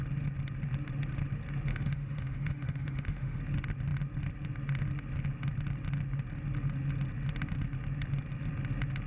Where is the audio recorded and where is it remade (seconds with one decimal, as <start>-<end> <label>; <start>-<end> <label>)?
0.0-1.7 recorded; 1.7-3.4 remade; 3.4-9.1 recorded